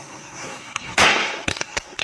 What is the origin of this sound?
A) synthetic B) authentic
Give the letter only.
A